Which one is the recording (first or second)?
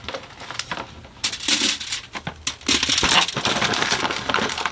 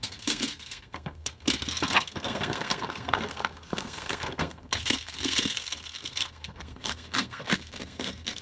first